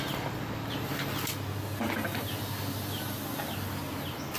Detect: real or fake real